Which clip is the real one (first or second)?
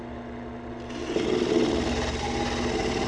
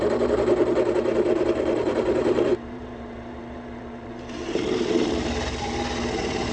first